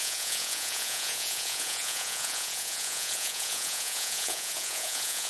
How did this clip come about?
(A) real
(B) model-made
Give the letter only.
B